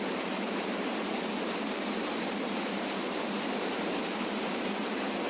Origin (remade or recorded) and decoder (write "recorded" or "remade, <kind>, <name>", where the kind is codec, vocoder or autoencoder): remade, vocoder, BigVGAN v2